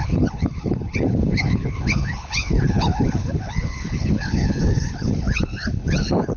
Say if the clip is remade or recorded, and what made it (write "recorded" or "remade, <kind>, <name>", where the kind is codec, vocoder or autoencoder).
remade, codec, HILCodec